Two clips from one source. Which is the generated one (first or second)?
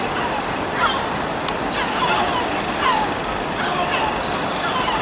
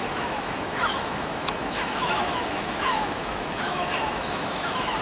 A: second